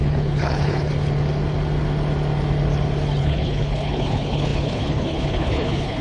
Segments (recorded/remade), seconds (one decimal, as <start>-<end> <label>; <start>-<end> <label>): 0.0-0.9 remade; 0.9-3.2 recorded; 3.2-6.0 remade